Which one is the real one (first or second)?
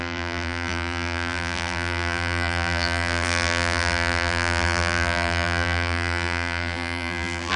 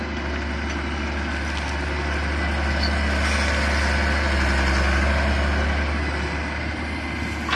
second